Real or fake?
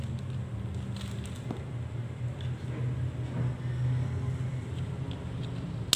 real